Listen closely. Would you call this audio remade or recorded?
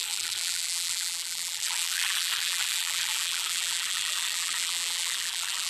remade